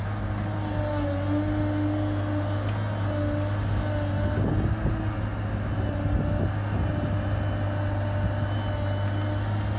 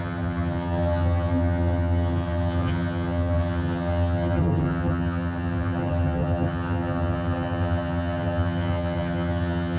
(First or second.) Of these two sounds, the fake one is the second